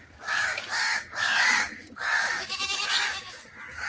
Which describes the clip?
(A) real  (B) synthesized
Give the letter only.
B